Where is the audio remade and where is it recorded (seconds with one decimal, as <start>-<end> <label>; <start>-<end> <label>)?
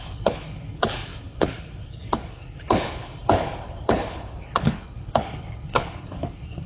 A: 0.0-6.7 remade